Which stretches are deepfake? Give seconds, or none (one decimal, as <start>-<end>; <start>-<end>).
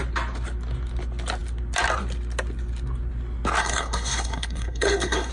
3.6-5.3